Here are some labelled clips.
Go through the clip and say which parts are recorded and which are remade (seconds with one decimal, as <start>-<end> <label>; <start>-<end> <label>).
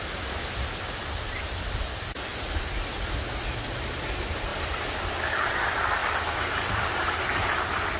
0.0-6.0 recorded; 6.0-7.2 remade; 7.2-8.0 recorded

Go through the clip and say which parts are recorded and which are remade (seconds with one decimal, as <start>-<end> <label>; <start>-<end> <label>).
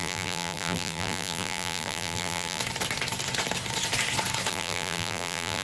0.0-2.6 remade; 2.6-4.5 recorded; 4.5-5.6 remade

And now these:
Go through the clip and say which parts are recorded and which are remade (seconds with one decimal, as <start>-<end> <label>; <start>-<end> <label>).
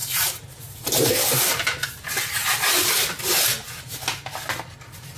0.0-1.2 remade; 1.2-5.2 recorded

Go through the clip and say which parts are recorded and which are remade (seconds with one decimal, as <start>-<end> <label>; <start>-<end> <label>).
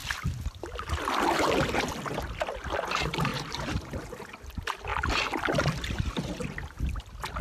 0.0-3.3 recorded; 3.3-4.0 remade; 4.0-7.4 recorded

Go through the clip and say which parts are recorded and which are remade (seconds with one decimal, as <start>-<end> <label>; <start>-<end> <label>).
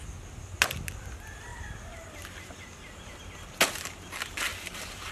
0.0-1.5 recorded; 1.5-3.2 remade; 3.2-4.5 recorded; 4.5-5.1 remade